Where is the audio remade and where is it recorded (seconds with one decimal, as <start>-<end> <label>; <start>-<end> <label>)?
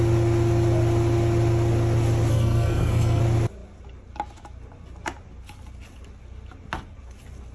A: 0.0-2.3 recorded; 2.3-3.2 remade; 3.2-7.5 recorded